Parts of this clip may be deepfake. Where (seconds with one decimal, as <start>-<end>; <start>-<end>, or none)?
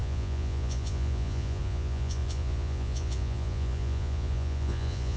0.0-5.2